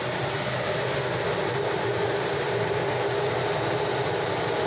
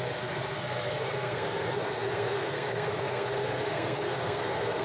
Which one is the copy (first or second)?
second